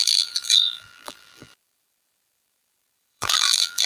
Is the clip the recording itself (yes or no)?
no